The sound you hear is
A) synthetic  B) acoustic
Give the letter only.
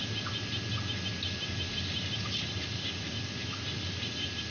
B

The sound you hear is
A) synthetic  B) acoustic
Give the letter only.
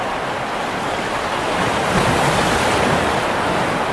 B